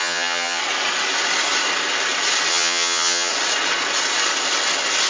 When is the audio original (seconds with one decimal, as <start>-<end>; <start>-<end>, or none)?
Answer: 0.6-2.5; 3.3-5.1